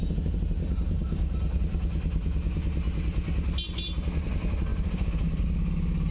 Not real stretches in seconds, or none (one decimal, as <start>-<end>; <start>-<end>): 0.6-1.6